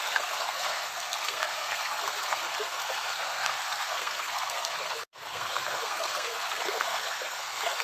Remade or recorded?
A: remade